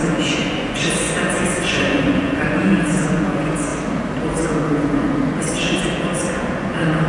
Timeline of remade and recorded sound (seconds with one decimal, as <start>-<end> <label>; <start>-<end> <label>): 0.0-3.7 remade; 3.7-4.2 recorded; 4.2-7.1 remade